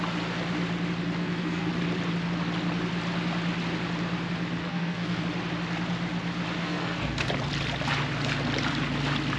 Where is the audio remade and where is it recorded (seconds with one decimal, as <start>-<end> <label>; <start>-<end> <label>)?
0.0-1.2 recorded; 1.2-1.7 remade; 1.7-4.6 recorded; 4.6-5.2 remade; 5.2-6.6 recorded; 6.6-7.3 remade; 7.3-9.4 recorded